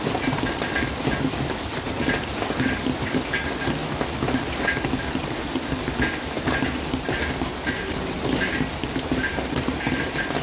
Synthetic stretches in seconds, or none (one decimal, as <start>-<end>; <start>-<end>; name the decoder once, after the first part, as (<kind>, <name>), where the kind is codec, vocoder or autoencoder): none